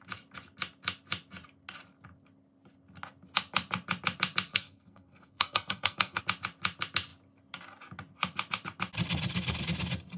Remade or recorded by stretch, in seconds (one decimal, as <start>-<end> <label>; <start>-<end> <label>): 0.0-4.5 recorded; 4.5-6.2 remade; 6.2-10.2 recorded